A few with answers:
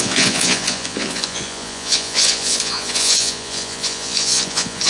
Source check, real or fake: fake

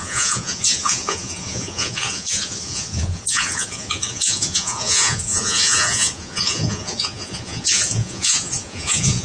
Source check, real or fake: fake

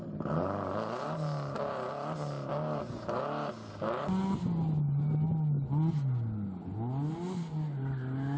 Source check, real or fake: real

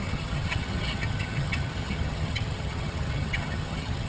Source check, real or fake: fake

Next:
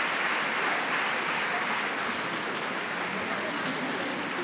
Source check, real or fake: real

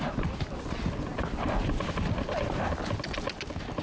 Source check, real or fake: real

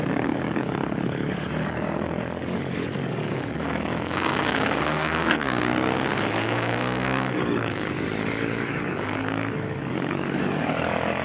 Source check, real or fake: fake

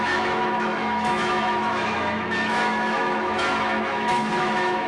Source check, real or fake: fake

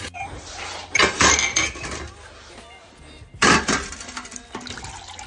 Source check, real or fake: real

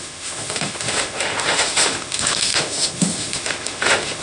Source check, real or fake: fake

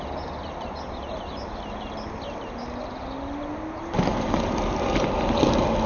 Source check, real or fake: real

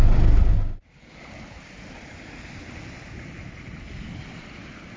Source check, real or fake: real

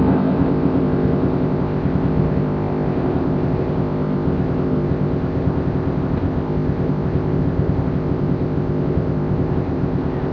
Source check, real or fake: fake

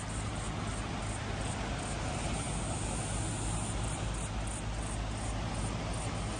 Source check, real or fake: real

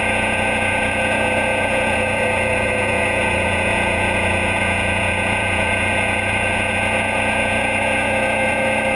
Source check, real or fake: fake